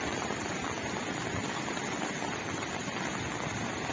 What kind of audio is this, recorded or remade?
recorded